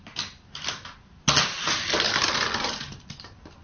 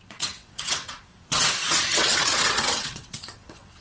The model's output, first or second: second